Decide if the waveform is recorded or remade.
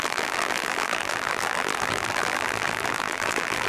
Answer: remade